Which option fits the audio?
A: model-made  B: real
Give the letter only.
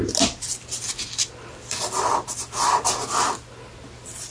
B